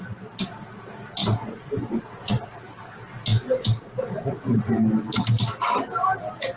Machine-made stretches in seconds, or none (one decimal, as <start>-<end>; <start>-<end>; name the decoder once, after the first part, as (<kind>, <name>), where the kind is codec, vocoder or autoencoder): 1.2-2.6 (vocoder, Vocos); 3.3-4.7